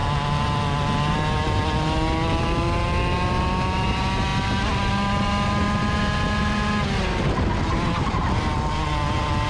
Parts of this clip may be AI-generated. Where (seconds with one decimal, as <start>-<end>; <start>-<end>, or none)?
none